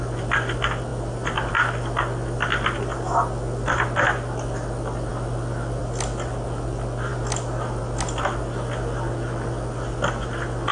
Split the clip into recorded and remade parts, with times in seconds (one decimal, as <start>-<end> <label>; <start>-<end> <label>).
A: 0.0-10.7 recorded